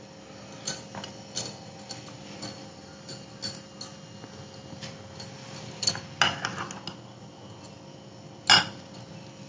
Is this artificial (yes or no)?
no